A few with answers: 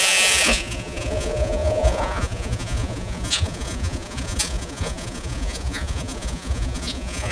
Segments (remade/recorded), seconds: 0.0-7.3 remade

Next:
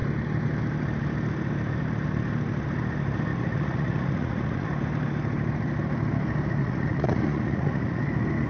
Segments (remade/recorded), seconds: 0.0-3.3 recorded; 3.3-4.7 remade; 4.7-6.6 recorded; 6.6-8.0 remade; 8.0-8.5 recorded

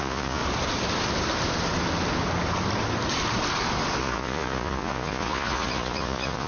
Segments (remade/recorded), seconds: 0.0-0.4 remade; 0.4-4.0 recorded; 4.0-6.5 remade

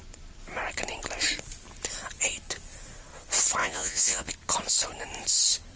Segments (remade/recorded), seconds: 0.0-3.6 recorded; 3.6-4.3 remade; 4.3-5.8 recorded

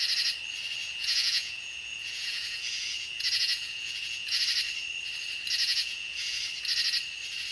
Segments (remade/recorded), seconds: 0.0-0.8 recorded; 0.8-4.4 remade; 4.4-5.6 recorded; 5.6-6.4 remade; 6.4-7.5 recorded

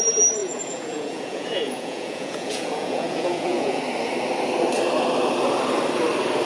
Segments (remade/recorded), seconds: 0.0-0.4 recorded; 0.4-3.8 remade; 3.8-6.4 recorded